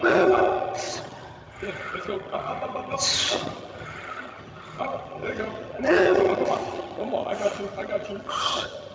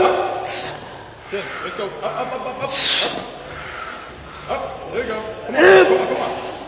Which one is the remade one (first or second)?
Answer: first